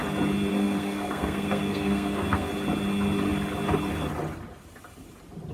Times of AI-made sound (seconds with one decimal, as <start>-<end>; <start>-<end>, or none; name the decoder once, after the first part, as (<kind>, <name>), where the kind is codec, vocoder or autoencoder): 0.5-2.5 (codec, SNAC)